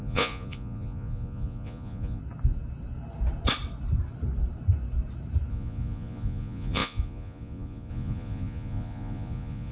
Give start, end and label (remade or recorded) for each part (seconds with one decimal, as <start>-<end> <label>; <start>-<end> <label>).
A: 0.0-2.2 remade; 2.2-5.5 recorded; 5.5-9.7 remade

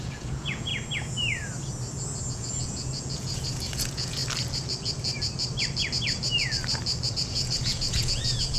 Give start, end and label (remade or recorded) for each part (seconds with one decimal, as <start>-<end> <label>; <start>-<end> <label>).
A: 0.0-0.7 remade; 0.7-2.3 recorded; 2.3-4.2 remade; 4.2-7.1 recorded; 7.1-8.6 remade